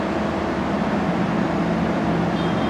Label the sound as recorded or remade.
recorded